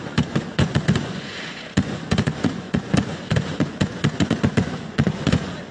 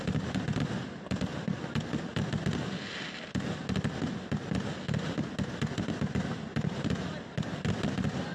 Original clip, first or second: second